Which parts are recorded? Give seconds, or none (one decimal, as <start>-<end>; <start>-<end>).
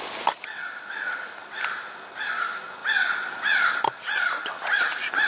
0.0-5.3